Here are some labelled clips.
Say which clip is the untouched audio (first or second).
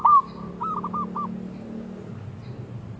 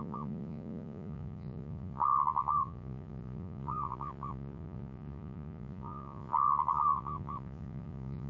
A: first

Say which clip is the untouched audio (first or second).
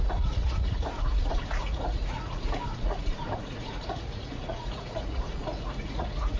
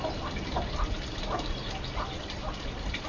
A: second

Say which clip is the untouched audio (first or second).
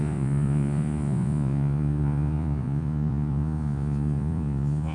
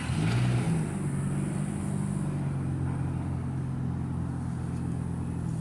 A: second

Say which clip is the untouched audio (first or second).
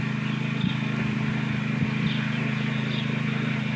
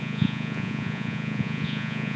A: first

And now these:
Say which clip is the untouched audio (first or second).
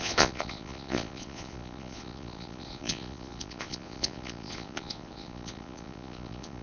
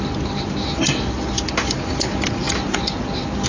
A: second